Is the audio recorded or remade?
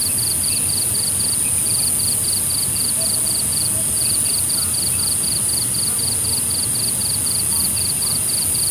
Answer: recorded